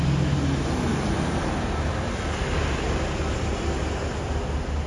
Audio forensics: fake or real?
real